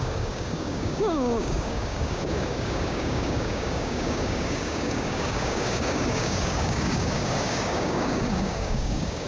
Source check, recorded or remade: remade